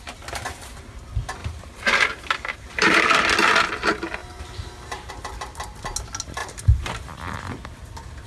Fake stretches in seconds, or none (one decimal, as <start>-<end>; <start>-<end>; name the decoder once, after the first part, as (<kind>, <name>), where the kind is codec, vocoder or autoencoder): 1.4-3.0 (vocoder, BigVGAN v2); 4.2-5.1; 6.4-6.9